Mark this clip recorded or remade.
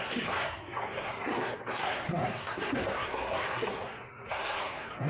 remade